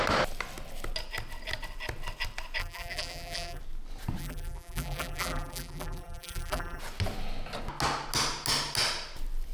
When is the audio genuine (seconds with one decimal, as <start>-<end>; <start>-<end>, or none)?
0.0-2.6; 3.6-4.2; 6.8-9.5